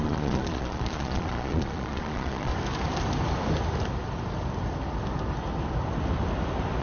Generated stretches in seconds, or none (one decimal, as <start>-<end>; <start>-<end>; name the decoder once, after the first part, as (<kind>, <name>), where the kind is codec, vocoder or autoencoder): 0.0-2.5 (vocoder, Vocos)